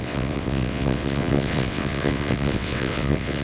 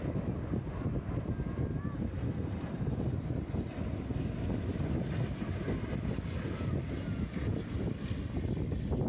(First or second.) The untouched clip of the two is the second